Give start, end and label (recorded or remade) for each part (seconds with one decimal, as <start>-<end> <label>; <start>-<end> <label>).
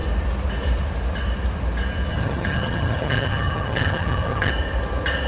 0.0-2.1 recorded; 2.1-4.5 remade; 4.5-5.3 recorded